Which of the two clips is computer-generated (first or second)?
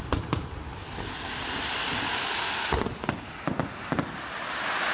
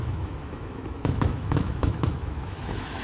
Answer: second